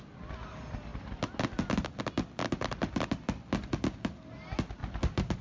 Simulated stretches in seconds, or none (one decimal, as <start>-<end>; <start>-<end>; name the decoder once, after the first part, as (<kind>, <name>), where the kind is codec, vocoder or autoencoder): none